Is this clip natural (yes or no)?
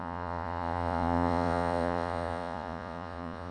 no